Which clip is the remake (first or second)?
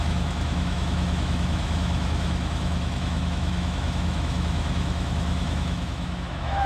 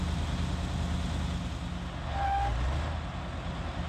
first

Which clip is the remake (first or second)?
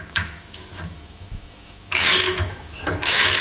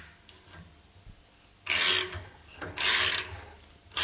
first